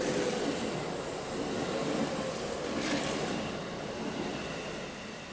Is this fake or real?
real